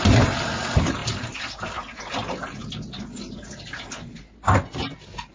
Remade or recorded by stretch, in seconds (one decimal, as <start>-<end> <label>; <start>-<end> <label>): 0.0-5.3 recorded